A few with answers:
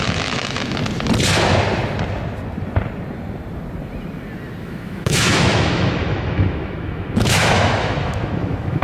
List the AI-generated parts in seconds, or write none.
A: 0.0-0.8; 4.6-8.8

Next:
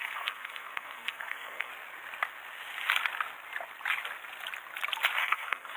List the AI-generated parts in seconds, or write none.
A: 0.0-1.7; 5.2-5.8

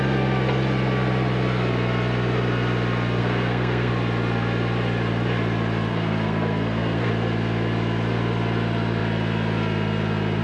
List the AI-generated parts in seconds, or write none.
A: 3.2-3.9; 5.9-7.1

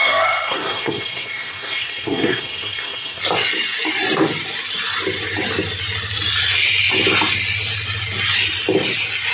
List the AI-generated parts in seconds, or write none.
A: 0.0-3.2

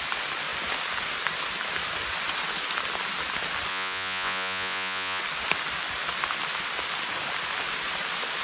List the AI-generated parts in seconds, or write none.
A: 3.7-5.2